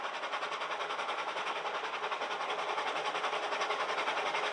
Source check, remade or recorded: recorded